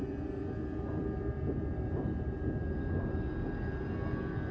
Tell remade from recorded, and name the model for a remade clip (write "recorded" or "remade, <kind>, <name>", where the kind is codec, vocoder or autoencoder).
recorded